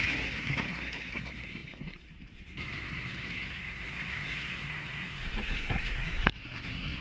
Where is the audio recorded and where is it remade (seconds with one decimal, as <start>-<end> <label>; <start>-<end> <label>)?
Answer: 0.0-7.0 remade